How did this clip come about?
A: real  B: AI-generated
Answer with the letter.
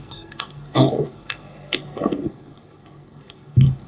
B